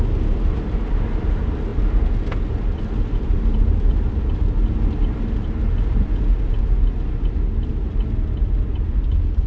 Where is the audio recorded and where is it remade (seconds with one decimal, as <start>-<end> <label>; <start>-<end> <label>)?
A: 0.0-9.5 recorded